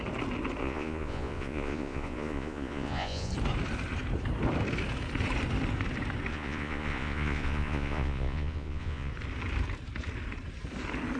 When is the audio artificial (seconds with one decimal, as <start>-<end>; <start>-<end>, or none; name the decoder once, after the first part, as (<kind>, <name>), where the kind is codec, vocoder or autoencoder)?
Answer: 0.6-3.3 (vocoder, Vocos); 6.3-9.1